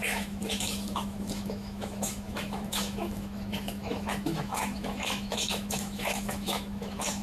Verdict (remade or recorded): remade